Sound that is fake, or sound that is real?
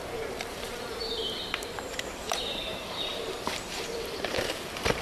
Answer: fake